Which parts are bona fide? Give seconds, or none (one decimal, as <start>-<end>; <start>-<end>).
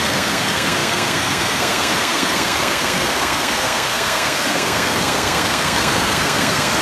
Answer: none